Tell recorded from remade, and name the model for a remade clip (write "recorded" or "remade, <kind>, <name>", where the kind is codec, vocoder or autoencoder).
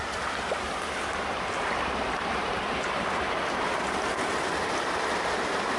recorded